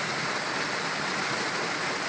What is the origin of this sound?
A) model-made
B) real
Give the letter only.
B